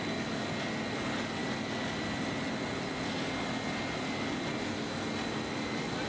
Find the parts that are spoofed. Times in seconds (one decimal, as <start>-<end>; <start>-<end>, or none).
none